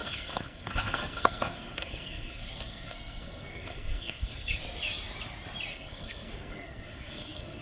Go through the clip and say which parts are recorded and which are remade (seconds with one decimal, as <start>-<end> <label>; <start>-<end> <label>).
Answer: 0.0-4.6 remade; 4.6-5.7 recorded; 5.7-7.6 remade